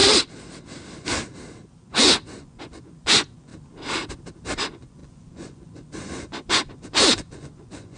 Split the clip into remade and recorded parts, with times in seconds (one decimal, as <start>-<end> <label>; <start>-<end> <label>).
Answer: 0.0-1.9 recorded; 1.9-3.5 remade; 3.5-4.5 recorded; 4.5-8.0 remade